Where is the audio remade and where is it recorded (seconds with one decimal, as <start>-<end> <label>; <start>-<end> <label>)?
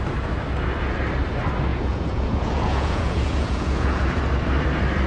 0.0-1.7 recorded; 1.7-4.2 remade; 4.2-5.1 recorded